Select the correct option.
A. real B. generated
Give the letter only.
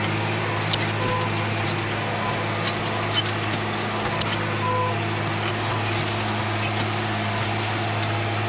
A